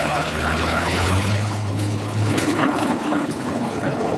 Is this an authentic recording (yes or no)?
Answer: no